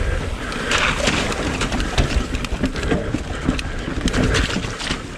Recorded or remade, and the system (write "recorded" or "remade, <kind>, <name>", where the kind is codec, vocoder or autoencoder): recorded